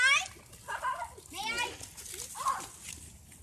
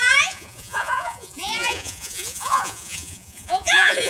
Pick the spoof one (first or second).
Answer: second